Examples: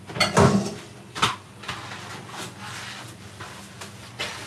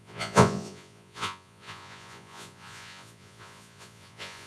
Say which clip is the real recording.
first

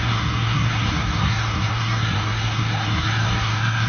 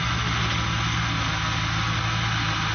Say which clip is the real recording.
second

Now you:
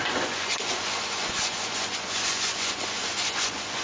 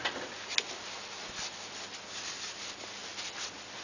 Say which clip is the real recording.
second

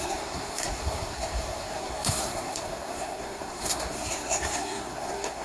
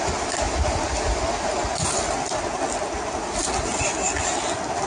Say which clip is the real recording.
second